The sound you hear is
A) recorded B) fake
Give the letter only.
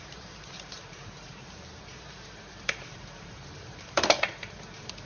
B